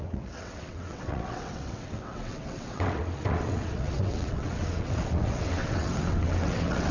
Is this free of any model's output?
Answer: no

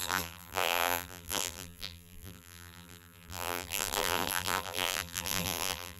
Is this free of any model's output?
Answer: no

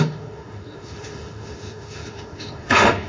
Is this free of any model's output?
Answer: no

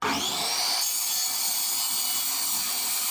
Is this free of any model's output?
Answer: yes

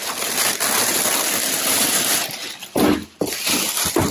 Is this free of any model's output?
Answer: yes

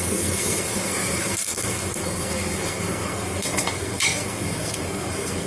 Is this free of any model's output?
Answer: no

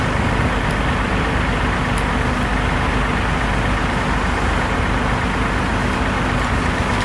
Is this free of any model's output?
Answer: yes